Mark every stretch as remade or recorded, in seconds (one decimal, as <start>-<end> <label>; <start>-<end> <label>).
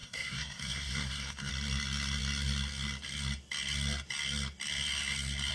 0.0-1.5 remade; 1.5-5.5 recorded